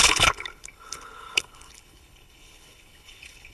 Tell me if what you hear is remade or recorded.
remade